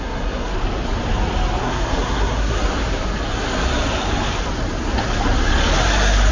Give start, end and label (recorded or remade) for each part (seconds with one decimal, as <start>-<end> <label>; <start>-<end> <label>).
0.0-0.5 remade; 0.5-1.6 recorded; 1.6-2.6 remade; 2.6-6.3 recorded